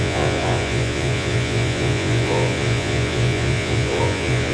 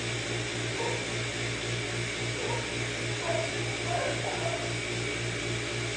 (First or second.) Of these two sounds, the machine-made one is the first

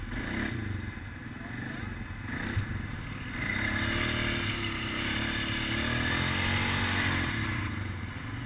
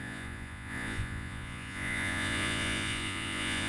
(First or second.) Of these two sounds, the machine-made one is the second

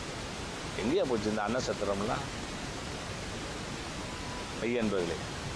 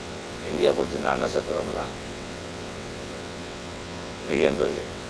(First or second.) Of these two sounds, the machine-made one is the second